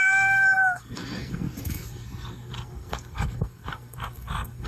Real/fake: fake